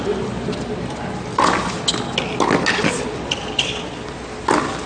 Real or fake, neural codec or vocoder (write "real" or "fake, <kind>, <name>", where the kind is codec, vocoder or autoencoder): real